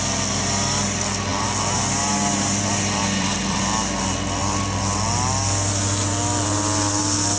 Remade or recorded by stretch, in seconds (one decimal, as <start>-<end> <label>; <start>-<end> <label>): 0.0-3.0 recorded; 3.0-3.6 remade; 3.6-7.4 recorded